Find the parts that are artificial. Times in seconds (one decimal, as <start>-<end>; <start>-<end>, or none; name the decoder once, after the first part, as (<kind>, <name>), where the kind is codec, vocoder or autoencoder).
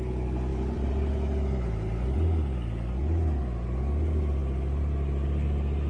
0.5-1.1 (vocoder, BigVGAN v2)